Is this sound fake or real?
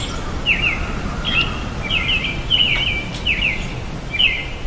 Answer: real